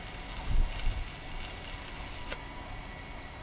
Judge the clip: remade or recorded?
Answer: recorded